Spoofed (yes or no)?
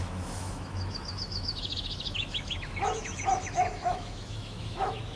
yes